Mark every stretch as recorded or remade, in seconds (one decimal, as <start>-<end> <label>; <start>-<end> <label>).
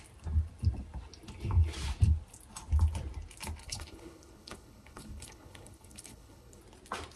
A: 0.0-3.6 recorded; 3.6-6.6 remade; 6.6-7.2 recorded